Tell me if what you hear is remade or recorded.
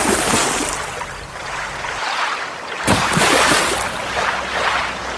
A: recorded